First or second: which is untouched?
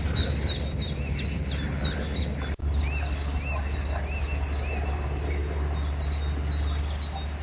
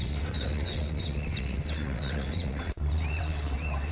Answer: first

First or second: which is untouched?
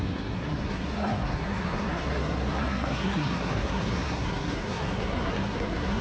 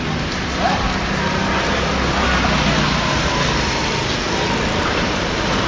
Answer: second